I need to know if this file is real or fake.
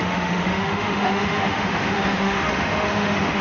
fake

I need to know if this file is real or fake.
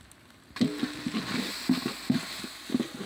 real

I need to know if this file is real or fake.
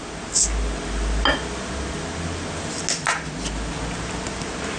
real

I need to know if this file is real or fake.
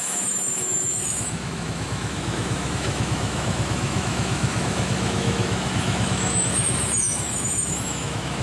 fake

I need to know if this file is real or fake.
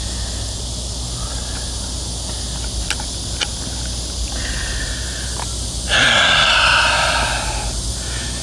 real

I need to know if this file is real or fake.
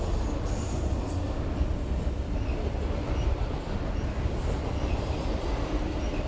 real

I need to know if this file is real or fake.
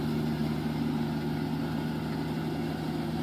real